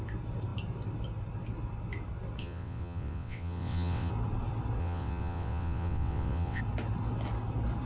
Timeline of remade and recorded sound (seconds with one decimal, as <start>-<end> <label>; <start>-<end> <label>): 0.0-2.4 recorded; 2.4-4.1 remade; 4.1-4.8 recorded; 4.8-6.6 remade; 6.6-7.9 recorded

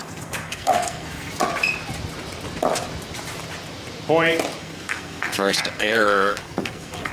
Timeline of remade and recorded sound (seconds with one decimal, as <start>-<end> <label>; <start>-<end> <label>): 0.0-1.3 remade; 1.3-4.6 recorded; 4.6-7.1 remade

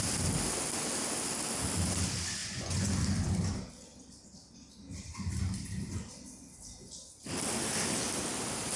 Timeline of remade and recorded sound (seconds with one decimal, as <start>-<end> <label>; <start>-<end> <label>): 0.0-2.4 recorded; 2.4-2.9 remade; 2.9-8.8 recorded

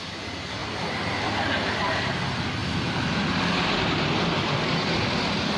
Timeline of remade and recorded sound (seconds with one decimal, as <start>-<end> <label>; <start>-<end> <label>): 0.0-2.6 remade; 2.6-4.3 recorded; 4.3-4.7 remade; 4.7-5.6 recorded

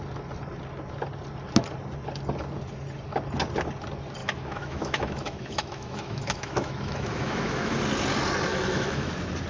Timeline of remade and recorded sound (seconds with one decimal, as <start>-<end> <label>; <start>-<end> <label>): 0.0-4.2 recorded; 4.2-7.8 remade; 7.8-8.5 recorded; 8.5-9.1 remade; 9.1-9.5 recorded

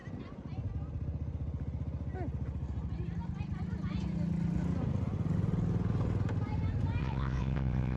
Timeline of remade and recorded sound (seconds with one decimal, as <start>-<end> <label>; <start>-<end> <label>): 0.0-7.0 recorded; 7.0-8.0 remade

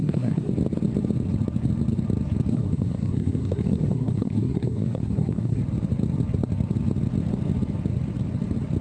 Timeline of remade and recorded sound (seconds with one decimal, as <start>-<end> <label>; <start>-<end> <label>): 0.0-0.5 remade; 0.5-2.5 recorded; 2.5-5.6 remade; 5.6-8.8 recorded

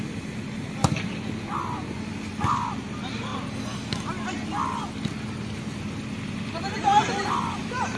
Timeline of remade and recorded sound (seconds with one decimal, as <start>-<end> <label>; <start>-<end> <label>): 0.0-8.0 recorded